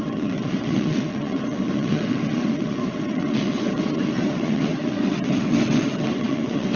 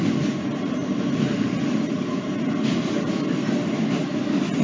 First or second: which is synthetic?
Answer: first